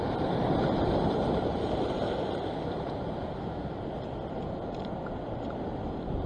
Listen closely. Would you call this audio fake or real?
real